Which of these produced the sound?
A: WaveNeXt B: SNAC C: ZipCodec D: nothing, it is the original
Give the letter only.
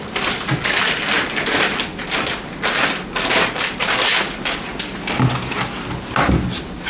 D